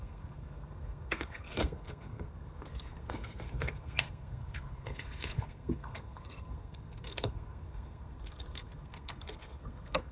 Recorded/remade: remade